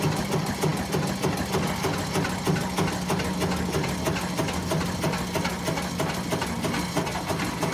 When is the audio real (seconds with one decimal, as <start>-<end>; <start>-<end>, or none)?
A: 0.0-7.7